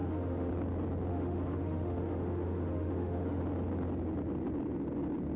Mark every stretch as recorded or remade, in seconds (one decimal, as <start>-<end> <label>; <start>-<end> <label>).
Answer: 0.0-0.5 remade; 0.5-1.1 recorded; 1.1-3.4 remade; 3.4-5.4 recorded